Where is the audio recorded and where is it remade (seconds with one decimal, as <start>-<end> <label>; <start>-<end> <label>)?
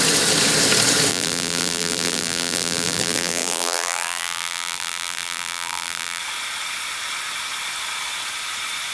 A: 0.0-1.1 recorded; 1.1-6.2 remade; 6.2-8.9 recorded